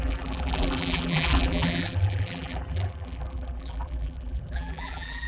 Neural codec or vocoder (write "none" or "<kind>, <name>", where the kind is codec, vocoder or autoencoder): vocoder, BigVGAN v2